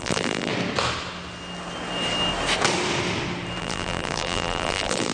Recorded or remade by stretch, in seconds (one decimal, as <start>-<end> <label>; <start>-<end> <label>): 0.0-0.5 remade; 0.5-3.6 recorded; 3.6-5.1 remade